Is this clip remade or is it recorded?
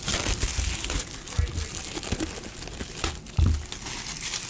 recorded